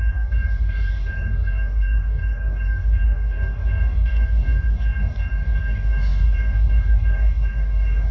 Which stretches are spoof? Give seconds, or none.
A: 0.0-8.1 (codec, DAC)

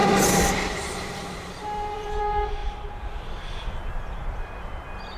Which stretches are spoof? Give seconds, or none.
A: 0.0-2.2 (vocoder, BigVGAN v2); 2.6-4.5

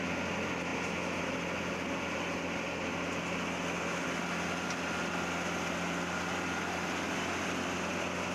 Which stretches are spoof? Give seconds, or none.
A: none

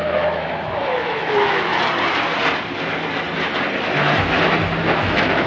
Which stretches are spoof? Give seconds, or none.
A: 0.0-1.7 (autoencoder, DAC-VAE); 5.0-5.5

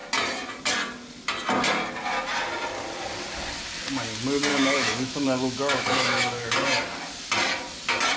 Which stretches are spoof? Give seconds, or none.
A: 4.5-6.5 (autoencoder, DAC-VAE)

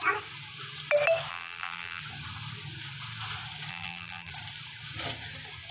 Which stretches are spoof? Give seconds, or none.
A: 1.3-2.0 (vocoder, BigVGAN v2); 3.7-4.3

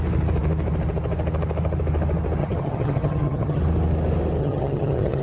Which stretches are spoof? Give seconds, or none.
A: 2.4-3.6 (vocoder, HiFi-GAN); 4.4-5.2